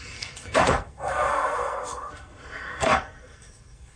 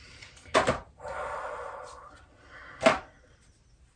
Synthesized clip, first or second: first